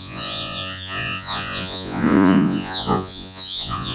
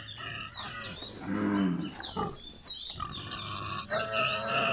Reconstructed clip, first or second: first